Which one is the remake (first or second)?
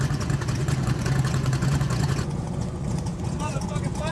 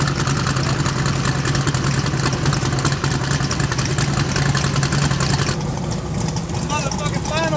first